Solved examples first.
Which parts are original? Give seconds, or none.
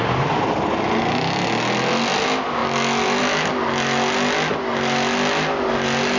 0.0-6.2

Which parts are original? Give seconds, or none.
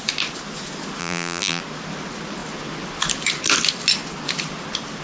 0.0-1.0; 1.6-5.0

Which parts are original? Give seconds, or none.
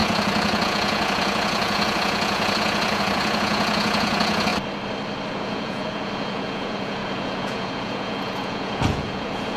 4.5-5.3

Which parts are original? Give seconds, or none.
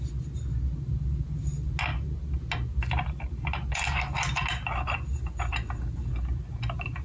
0.0-7.0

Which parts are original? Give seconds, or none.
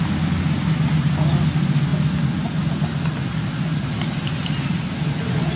0.0-5.6